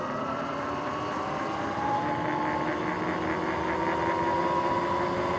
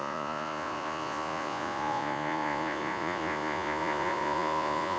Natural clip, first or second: first